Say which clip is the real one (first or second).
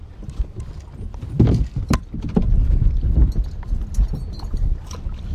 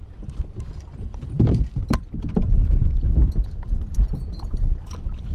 first